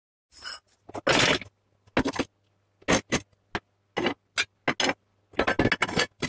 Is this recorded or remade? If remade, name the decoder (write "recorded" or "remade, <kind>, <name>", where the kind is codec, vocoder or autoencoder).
recorded